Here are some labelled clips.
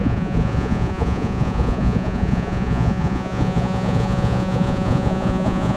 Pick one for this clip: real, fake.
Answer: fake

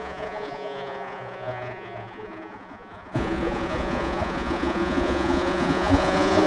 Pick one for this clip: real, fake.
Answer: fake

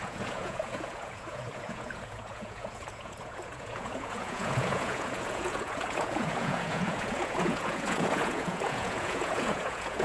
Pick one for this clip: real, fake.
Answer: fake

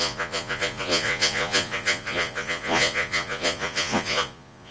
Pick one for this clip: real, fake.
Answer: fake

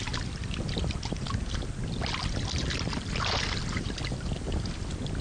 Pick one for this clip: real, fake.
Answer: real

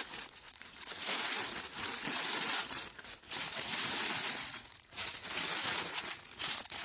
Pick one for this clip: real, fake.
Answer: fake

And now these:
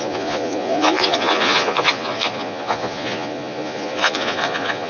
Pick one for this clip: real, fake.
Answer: fake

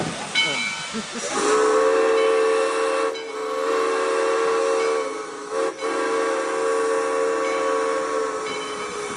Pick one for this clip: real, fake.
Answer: real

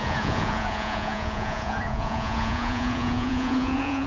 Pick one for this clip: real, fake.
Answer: fake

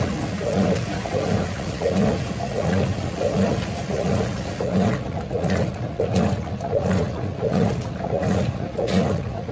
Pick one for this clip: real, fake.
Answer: fake